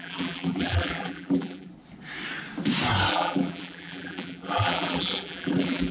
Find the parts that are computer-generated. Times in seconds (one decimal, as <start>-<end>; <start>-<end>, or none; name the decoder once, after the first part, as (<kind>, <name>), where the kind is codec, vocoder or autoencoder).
0.0-1.7 (vocoder, BigVGAN v2); 3.1-5.9